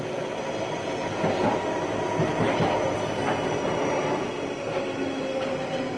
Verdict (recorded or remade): recorded